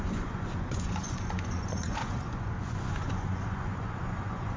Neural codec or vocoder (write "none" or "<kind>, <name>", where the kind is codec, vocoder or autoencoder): vocoder, Vocos